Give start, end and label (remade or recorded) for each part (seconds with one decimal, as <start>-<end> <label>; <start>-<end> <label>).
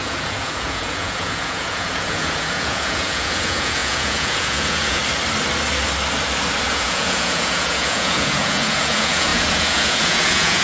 0.0-5.0 remade; 5.0-6.7 recorded; 6.7-10.6 remade